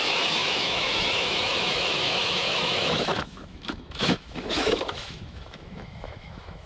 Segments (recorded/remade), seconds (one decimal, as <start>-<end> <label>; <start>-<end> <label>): 0.0-6.7 remade